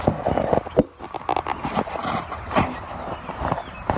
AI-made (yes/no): no